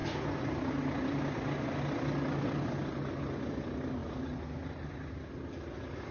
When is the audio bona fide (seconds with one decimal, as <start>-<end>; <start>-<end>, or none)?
0.0-4.0; 4.9-6.1